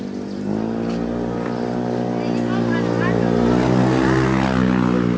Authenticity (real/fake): real